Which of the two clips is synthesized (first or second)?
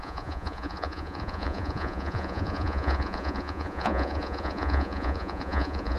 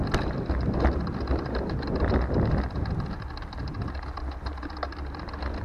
first